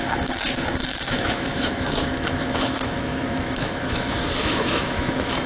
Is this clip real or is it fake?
fake